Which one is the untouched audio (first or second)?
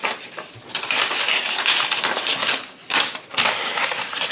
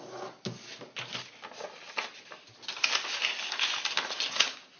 second